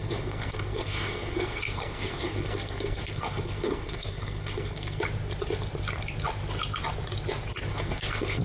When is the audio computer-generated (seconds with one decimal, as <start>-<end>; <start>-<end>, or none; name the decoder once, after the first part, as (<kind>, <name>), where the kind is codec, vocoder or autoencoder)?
0.0-5.0 (codec, SNAC); 7.7-8.4